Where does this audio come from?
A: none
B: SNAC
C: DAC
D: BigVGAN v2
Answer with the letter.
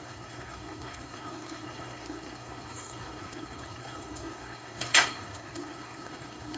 B